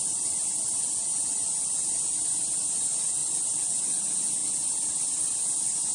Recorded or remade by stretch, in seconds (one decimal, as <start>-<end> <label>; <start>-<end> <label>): 0.0-5.9 recorded